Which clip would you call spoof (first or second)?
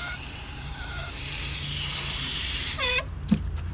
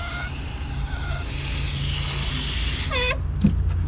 first